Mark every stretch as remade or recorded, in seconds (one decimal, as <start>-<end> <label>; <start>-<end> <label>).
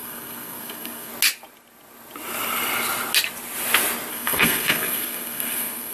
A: 0.0-1.1 remade; 1.1-4.1 recorded; 4.1-5.9 remade